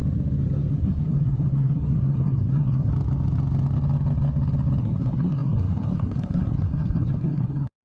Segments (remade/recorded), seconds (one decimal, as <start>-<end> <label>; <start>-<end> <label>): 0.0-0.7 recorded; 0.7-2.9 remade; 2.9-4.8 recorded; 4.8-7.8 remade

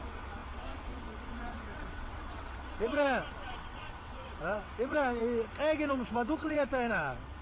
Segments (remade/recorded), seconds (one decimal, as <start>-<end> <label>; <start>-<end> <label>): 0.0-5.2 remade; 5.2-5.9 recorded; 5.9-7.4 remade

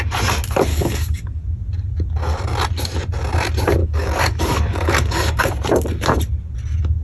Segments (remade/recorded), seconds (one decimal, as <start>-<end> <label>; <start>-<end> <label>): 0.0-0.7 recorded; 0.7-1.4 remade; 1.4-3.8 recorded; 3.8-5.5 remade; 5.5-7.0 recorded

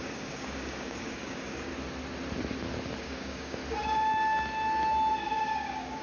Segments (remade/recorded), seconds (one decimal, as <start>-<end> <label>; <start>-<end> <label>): 0.0-1.7 remade; 1.7-3.0 recorded; 3.0-3.6 remade; 3.6-5.1 recorded; 5.1-6.0 remade

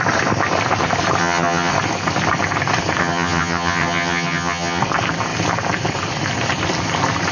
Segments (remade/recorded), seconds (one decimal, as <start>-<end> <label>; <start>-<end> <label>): 0.0-1.2 recorded; 1.2-1.7 remade; 1.7-3.0 recorded; 3.0-4.8 remade; 4.8-7.3 recorded